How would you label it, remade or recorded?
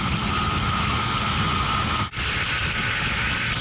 recorded